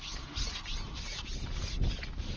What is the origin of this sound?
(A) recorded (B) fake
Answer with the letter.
A